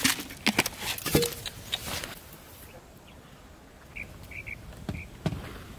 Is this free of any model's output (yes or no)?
yes